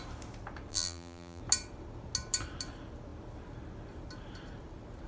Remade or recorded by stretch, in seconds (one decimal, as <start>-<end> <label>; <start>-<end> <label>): 0.0-0.7 recorded; 0.7-1.4 remade; 1.4-5.1 recorded